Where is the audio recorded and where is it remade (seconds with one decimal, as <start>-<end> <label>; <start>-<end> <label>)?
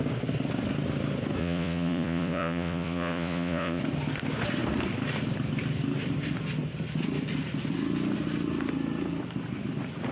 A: 0.0-1.4 recorded; 1.4-3.8 remade; 3.8-10.1 recorded